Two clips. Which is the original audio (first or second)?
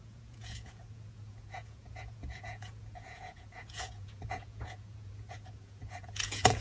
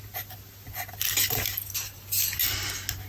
second